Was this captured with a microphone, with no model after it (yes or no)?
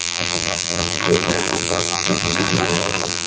no